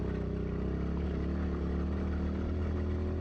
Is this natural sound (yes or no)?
yes